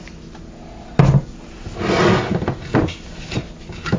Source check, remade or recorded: recorded